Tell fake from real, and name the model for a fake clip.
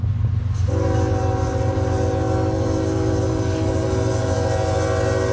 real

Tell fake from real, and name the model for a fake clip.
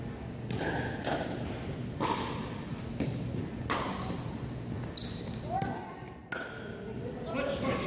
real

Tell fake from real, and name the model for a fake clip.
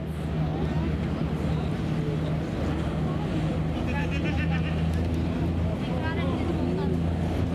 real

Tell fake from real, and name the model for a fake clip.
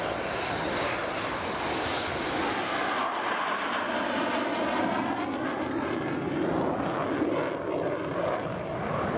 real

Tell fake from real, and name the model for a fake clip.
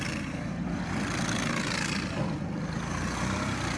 fake, vocoder, BigVGAN v2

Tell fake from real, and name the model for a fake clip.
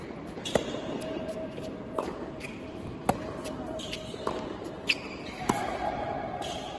fake, vocoder, BigVGAN v2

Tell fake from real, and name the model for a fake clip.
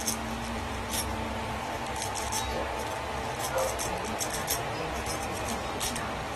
real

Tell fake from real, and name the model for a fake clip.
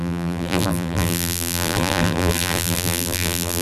fake, vocoder, BigVGAN v2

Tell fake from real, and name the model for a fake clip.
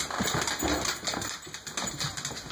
real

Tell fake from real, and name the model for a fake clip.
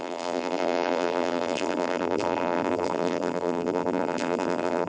fake, vocoder, BigVGAN v2